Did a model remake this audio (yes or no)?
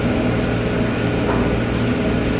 no